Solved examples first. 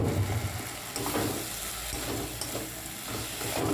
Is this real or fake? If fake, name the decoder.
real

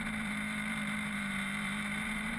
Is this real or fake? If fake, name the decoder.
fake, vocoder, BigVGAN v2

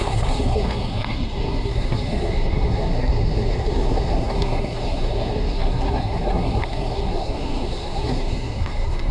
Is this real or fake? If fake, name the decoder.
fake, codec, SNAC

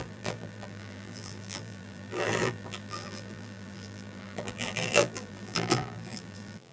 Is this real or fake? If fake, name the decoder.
fake, vocoder, BigVGAN v2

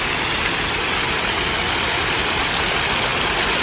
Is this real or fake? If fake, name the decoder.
real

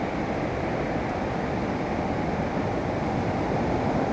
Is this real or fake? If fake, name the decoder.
real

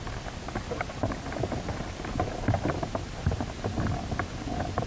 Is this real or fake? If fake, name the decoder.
real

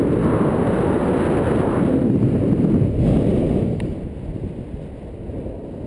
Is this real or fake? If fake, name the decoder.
real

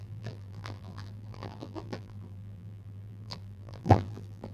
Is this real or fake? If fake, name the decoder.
fake, vocoder, BigVGAN v2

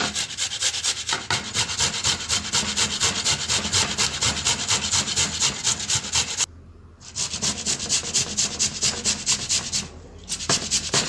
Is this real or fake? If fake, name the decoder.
real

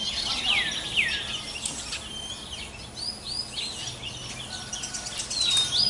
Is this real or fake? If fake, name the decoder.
real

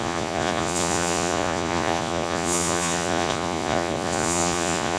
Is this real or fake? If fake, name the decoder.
fake, vocoder, Vocos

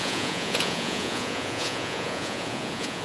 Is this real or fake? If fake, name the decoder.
fake, vocoder, Vocos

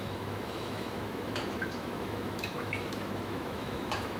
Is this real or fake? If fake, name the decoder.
fake, autoencoder, DAC-VAE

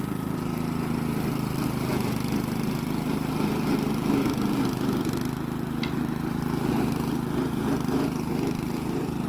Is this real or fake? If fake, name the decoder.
real